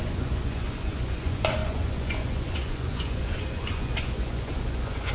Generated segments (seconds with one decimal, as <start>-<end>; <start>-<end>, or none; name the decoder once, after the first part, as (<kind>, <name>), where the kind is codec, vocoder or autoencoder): 0.0-5.1 (vocoder, Vocos)